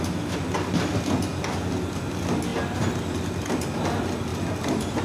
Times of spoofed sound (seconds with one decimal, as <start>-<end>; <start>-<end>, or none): none